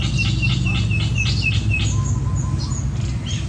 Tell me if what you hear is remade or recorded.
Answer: recorded